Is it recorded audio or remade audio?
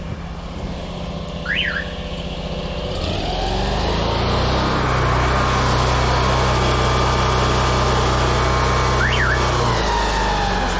recorded